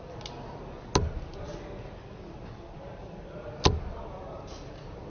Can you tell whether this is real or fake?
real